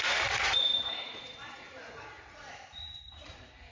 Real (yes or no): no